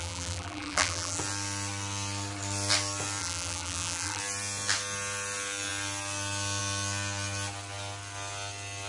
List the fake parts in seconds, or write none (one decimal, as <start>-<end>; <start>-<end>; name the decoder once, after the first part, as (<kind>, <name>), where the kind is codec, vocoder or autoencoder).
0.0-1.2 (vocoder, BigVGAN v2); 3.2-4.2